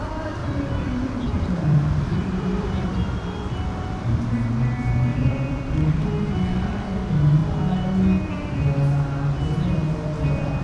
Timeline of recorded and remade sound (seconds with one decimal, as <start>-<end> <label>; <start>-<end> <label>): 0.0-0.4 recorded; 0.4-4.2 remade; 4.2-5.1 recorded; 5.1-5.9 remade; 5.9-10.6 recorded